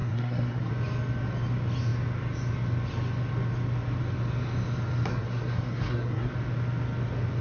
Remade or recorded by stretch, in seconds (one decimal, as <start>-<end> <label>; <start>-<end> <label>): 0.0-0.7 remade; 0.7-5.1 recorded; 5.1-6.3 remade; 6.3-7.4 recorded